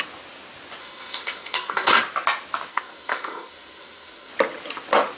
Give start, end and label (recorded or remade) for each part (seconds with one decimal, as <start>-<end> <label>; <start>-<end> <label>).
0.0-0.8 recorded; 0.8-2.0 remade; 2.0-2.7 recorded; 2.7-4.3 remade; 4.3-5.2 recorded